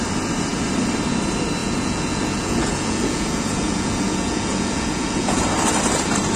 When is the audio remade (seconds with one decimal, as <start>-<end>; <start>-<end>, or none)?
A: 1.6-5.4